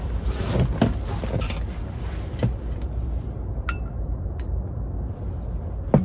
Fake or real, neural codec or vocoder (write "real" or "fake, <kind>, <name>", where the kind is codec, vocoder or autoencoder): real